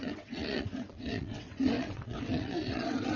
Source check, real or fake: fake